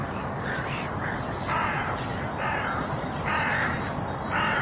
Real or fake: real